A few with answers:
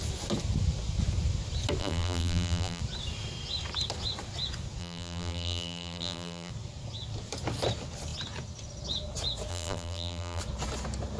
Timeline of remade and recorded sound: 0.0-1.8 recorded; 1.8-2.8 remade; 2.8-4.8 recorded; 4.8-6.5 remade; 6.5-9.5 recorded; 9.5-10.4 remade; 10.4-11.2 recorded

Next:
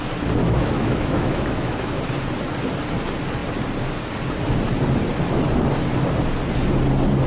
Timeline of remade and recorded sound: 0.0-0.4 recorded; 0.4-2.1 remade; 2.1-7.3 recorded

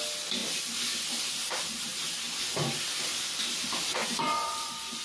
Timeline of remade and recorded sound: 0.0-4.0 recorded; 4.0-5.0 remade

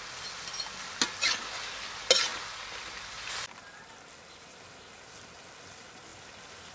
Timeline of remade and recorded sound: 0.0-6.7 recorded

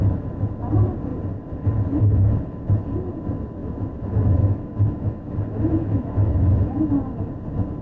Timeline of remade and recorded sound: 0.0-3.6 recorded; 3.6-6.9 remade; 6.9-7.8 recorded

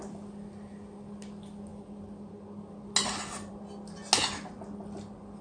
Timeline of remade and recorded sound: 0.0-5.4 recorded

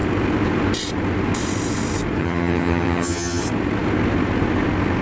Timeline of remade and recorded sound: 0.0-2.2 recorded; 2.2-3.4 remade; 3.4-5.0 recorded

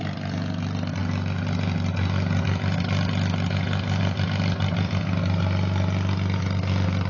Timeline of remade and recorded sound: 0.0-7.1 recorded